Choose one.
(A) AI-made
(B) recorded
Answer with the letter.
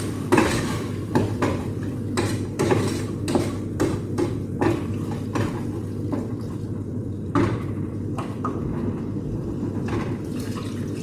A